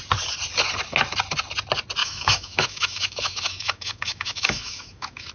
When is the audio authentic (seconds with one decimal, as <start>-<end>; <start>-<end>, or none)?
0.0-2.0